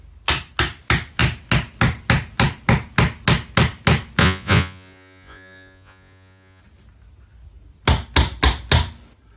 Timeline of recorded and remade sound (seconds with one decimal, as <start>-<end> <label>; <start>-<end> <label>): 0.0-4.2 recorded; 4.2-6.6 remade; 6.6-9.4 recorded